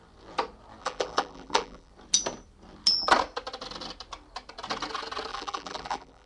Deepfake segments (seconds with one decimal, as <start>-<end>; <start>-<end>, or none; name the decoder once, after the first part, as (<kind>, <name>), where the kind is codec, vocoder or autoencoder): 0.8-1.9 (vocoder, BigVGAN v2); 5.3-6.3